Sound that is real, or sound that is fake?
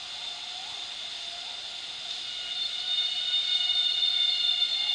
real